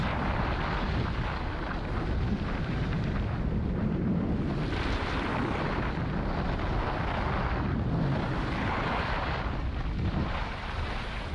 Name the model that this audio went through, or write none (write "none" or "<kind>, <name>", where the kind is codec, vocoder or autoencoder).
none